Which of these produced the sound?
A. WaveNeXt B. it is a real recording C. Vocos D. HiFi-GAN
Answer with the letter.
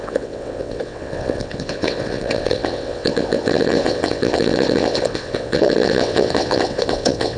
A